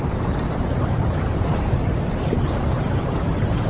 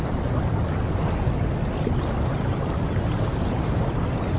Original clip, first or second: second